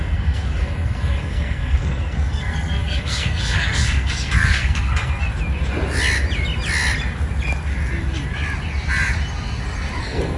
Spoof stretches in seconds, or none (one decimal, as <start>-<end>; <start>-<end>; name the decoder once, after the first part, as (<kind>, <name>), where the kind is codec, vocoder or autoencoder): 0.0-5.3 (codec, SNAC); 10.0-10.4